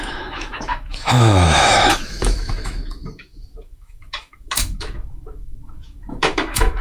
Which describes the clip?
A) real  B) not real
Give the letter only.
B